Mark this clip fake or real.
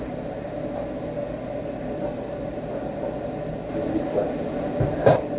real